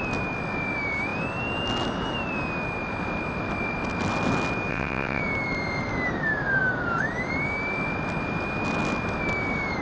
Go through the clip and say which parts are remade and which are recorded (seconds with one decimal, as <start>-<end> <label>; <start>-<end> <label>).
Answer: 0.0-4.7 recorded; 4.7-5.2 remade; 5.2-9.8 recorded